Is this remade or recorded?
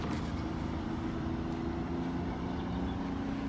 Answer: recorded